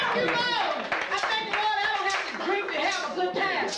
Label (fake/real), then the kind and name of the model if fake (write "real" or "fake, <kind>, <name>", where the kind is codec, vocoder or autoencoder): real